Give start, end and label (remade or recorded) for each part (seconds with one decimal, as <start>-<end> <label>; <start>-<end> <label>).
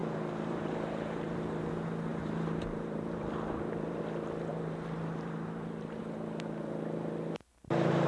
0.0-1.7 remade; 1.7-2.1 recorded; 2.1-4.0 remade; 4.0-4.5 recorded; 4.5-6.0 remade; 6.0-8.1 recorded